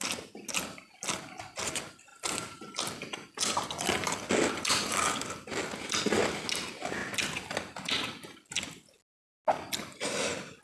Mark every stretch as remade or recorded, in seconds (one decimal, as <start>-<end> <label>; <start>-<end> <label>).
0.0-10.6 recorded